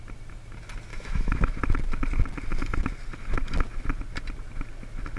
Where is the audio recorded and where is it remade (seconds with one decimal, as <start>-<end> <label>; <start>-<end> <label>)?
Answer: 0.0-0.9 recorded; 0.9-1.6 remade; 1.6-5.2 recorded